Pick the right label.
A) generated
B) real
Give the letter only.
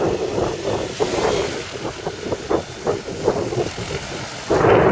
B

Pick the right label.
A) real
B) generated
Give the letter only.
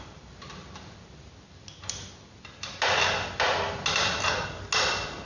A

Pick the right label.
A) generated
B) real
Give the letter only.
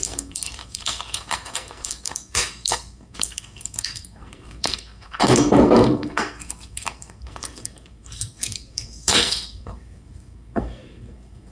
A